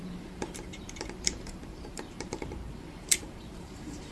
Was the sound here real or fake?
fake